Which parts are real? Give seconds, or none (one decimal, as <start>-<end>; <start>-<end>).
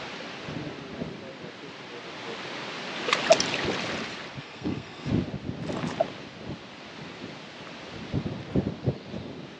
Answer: 0.0-4.4; 5.1-9.6